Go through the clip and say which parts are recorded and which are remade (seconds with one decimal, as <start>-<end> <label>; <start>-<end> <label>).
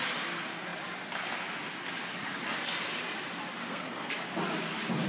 0.0-3.6 recorded; 3.6-4.1 remade; 4.1-5.1 recorded